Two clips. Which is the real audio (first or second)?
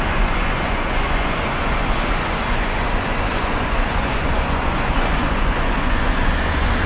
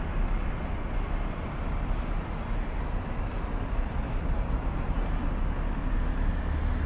second